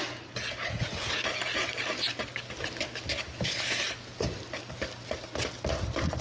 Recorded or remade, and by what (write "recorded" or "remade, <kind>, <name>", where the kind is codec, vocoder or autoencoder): recorded